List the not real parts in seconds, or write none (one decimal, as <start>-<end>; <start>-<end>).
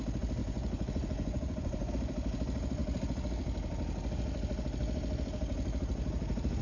0.4-1.9